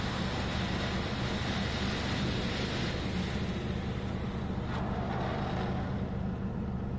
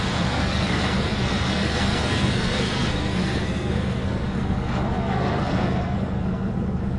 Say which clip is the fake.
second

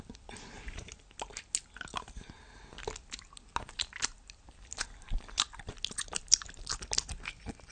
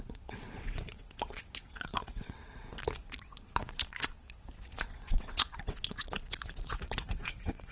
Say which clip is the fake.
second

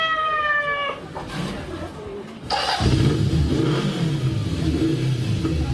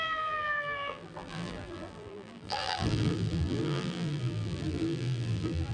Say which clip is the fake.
second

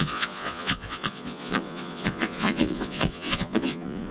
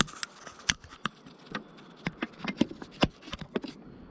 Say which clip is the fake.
first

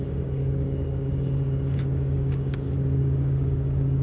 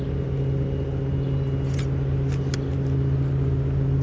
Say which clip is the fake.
first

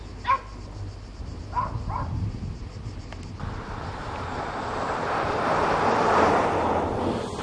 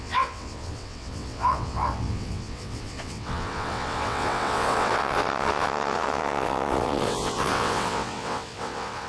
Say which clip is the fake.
second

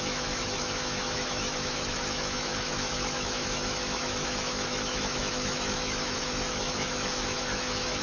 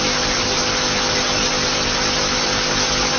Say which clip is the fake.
first